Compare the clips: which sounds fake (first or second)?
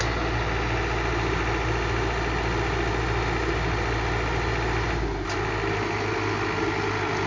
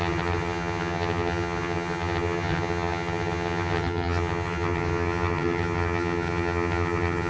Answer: second